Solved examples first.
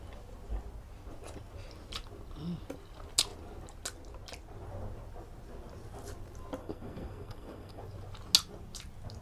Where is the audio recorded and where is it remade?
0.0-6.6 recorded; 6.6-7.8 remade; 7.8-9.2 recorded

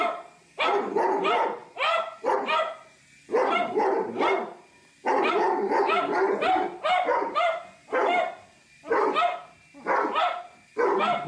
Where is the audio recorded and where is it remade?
0.0-11.3 recorded